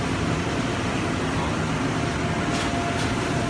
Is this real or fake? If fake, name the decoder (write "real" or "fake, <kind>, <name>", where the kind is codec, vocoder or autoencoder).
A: real